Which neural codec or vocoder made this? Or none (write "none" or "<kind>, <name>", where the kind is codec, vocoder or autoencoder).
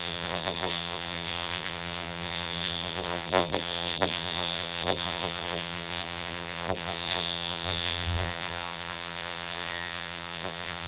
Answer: vocoder, BigVGAN v2